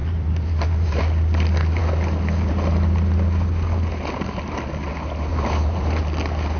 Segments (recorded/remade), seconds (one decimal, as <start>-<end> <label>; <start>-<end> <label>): 0.0-1.0 remade; 1.0-5.3 recorded; 5.3-6.0 remade; 6.0-6.6 recorded